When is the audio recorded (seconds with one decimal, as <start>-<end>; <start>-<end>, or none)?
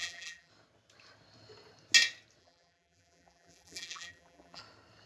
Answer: 0.5-2.4; 4.6-5.1